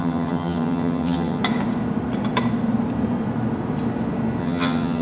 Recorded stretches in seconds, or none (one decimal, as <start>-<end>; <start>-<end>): 1.4-4.4